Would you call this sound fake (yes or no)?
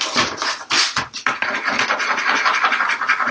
no